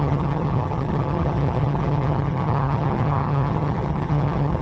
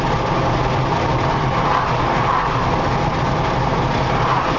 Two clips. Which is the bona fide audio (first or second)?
second